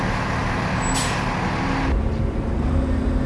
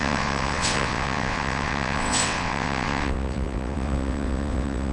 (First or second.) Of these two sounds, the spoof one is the second